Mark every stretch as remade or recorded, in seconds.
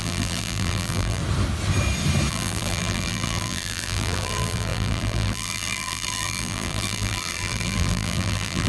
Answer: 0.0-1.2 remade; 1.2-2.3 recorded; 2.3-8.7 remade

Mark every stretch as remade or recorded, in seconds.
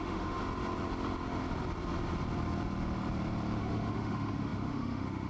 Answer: 0.0-0.4 remade; 0.4-3.6 recorded; 3.6-5.3 remade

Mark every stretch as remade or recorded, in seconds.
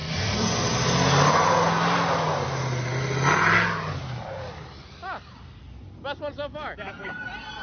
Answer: 0.0-0.7 remade; 0.7-7.6 recorded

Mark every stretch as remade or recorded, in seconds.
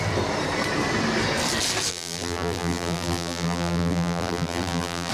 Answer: 0.0-1.9 recorded; 1.9-5.1 remade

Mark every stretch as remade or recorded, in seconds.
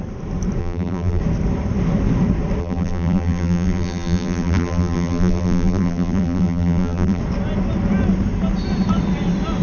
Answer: 0.0-0.6 recorded; 0.6-1.2 remade; 1.2-2.6 recorded; 2.6-7.2 remade; 7.2-9.6 recorded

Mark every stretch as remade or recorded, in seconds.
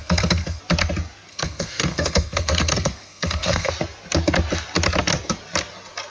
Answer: 0.0-0.6 remade; 0.6-1.3 recorded; 1.3-3.7 remade; 3.7-6.1 recorded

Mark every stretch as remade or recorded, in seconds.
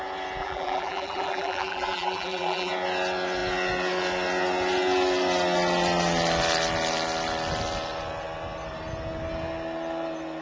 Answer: 0.0-0.4 recorded; 0.4-2.7 remade; 2.7-10.4 recorded